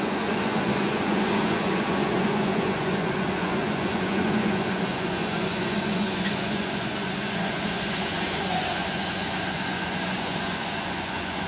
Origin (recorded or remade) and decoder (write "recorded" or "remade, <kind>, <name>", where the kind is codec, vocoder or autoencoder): remade, vocoder, Vocos